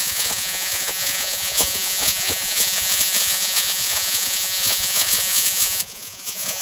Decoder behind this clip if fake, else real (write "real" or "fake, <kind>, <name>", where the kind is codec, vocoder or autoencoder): fake, vocoder, Vocos